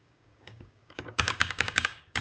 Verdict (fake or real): fake